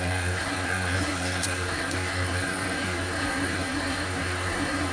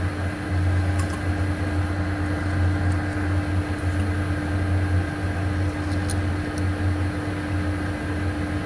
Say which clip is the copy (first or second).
first